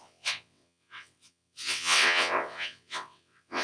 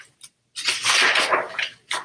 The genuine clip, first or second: second